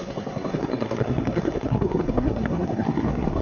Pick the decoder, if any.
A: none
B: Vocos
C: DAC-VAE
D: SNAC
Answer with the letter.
D